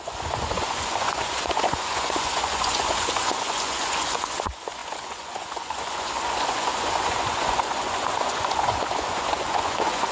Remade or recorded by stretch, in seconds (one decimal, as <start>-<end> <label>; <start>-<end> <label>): 0.0-10.1 remade